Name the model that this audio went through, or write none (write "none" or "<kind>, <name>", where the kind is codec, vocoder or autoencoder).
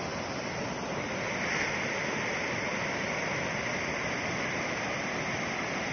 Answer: none